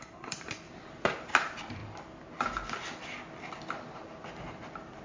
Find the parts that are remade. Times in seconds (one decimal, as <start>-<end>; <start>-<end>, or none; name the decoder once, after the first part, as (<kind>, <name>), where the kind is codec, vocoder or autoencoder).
0.0-1.8 (vocoder, BigVGAN v2)

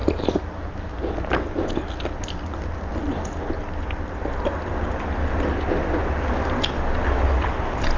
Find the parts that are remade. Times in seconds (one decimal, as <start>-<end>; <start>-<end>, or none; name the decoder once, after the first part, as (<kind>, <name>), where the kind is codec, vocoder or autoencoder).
4.7-5.2 (vocoder, BigVGAN v2); 7.3-8.0

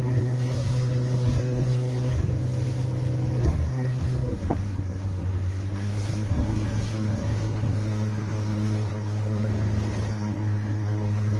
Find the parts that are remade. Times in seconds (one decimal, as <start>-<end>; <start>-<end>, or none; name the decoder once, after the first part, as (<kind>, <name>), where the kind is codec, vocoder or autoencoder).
0.0-2.3 (codec, SNAC); 3.4-9.5; 10.1-11.4

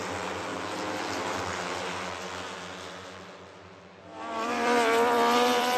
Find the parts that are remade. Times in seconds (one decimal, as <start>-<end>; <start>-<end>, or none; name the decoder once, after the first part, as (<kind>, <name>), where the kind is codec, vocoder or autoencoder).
0.0-0.5 (vocoder, BigVGAN v2); 4.0-5.8

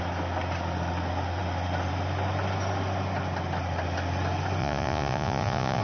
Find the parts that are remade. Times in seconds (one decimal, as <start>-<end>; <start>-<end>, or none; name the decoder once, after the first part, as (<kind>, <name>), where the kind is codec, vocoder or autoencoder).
4.6-5.8 (vocoder, Vocos)

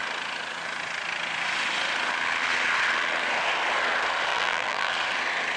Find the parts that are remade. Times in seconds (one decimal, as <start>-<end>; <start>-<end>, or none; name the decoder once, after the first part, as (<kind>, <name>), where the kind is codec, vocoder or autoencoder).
4.3-4.9 (vocoder, BigVGAN v2)

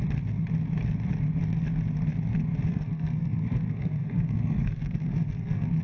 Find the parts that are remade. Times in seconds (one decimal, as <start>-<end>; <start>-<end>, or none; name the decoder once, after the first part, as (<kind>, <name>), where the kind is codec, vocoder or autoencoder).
2.7-5.8 (codec, SNAC)

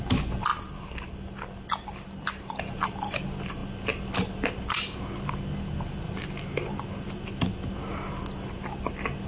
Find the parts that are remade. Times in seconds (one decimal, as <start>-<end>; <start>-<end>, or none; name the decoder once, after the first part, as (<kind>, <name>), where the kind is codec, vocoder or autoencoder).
none